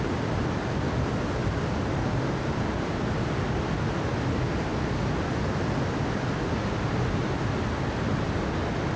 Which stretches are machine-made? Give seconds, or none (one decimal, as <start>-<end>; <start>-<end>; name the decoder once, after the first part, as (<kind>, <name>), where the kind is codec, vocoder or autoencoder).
none